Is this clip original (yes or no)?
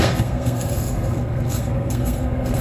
no